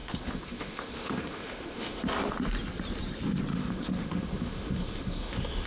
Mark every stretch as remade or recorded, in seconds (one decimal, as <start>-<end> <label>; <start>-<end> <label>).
0.0-2.0 remade; 2.0-3.5 recorded; 3.5-5.7 remade